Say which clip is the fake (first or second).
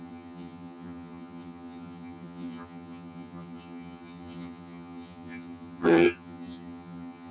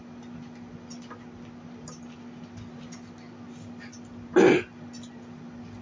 first